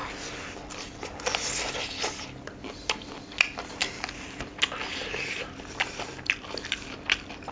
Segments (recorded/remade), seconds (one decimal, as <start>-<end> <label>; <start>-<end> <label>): 0.0-7.5 recorded